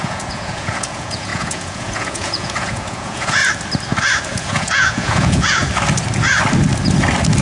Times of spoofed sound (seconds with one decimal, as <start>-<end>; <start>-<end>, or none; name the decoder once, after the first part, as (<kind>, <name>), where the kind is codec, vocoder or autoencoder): 0.0-3.4 (vocoder, Vocos); 4.3-5.6